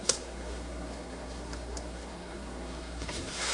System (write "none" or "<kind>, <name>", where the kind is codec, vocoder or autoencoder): codec, SNAC